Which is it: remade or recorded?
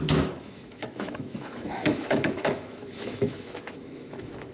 remade